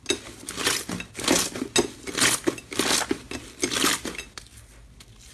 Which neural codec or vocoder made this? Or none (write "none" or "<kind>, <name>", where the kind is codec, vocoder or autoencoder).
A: none